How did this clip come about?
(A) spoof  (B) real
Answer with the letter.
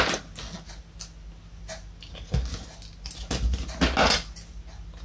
B